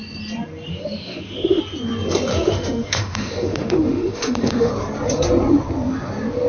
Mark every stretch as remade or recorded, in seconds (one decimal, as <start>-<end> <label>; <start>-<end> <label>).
0.0-0.7 recorded; 0.7-1.6 remade; 1.6-2.3 recorded; 2.3-4.7 remade; 4.7-6.5 recorded